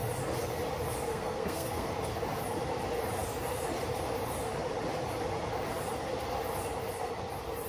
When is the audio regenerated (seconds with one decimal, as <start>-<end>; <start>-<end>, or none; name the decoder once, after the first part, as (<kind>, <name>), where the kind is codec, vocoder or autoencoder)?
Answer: 1.1-1.9 (codec, SNAC)